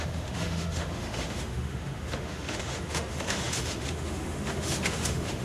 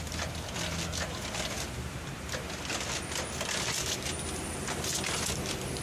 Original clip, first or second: second